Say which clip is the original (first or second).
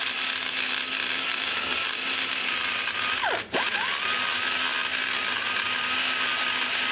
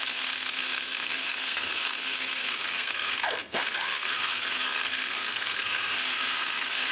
first